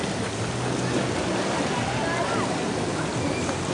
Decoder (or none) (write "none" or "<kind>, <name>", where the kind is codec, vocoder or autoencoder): none